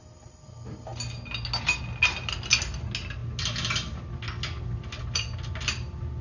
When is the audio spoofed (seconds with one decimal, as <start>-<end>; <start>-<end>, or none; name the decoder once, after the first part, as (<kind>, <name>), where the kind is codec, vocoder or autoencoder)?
none